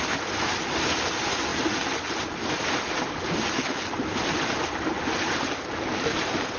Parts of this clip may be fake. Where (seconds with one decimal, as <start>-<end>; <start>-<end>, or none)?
none